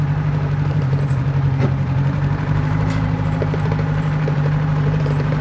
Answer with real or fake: fake